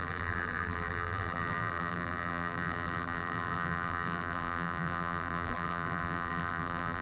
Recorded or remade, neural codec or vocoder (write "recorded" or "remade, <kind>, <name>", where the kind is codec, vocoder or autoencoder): remade, vocoder, BigVGAN v2